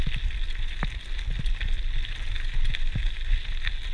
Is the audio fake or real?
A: real